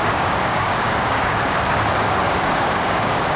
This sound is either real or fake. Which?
fake